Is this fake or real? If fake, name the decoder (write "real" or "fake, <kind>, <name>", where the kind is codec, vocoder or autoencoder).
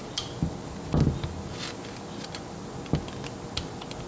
real